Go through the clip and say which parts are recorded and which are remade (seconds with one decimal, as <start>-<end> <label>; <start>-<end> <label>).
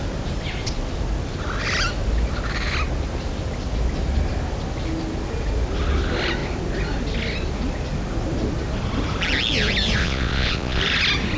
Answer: 0.0-10.0 recorded; 10.0-10.8 remade; 10.8-11.4 recorded